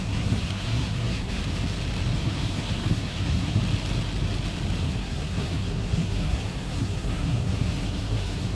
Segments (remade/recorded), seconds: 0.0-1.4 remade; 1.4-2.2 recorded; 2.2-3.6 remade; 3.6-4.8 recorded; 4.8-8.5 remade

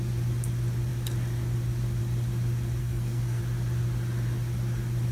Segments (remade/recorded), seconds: 0.0-2.8 recorded; 2.8-3.4 remade; 3.4-5.1 recorded

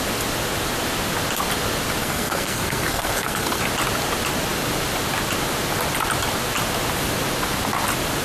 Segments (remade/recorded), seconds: 0.0-2.0 recorded; 2.0-3.6 remade; 3.6-8.2 recorded

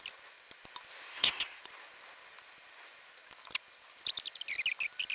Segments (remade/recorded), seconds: 0.0-1.1 recorded; 1.1-1.6 remade; 1.6-5.1 recorded